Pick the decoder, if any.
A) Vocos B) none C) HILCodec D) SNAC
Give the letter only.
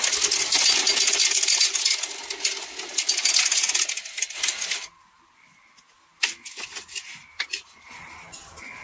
B